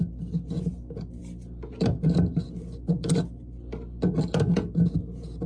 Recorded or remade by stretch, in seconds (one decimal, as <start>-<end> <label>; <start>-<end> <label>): 0.0-5.5 recorded